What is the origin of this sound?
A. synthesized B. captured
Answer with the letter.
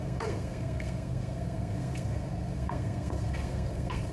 A